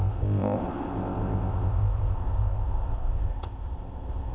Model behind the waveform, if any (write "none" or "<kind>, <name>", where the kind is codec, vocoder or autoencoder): codec, ZipCodec